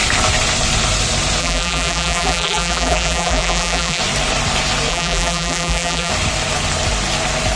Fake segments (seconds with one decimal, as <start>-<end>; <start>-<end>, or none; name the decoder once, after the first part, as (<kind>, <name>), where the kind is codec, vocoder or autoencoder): 1.4-4.0 (vocoder, BigVGAN v2); 4.9-6.1